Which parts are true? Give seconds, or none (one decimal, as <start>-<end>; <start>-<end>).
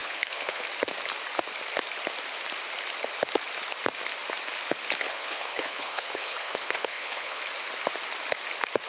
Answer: 0.6-5.0; 7.4-8.9